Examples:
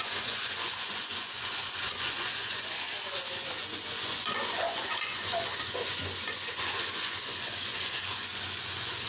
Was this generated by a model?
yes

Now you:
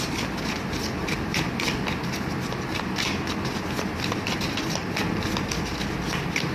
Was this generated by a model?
no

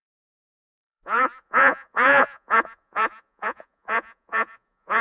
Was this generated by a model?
yes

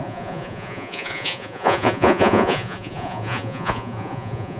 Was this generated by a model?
yes